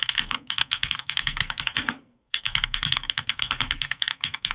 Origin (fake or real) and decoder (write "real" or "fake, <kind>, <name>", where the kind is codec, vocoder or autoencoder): fake, codec, SNAC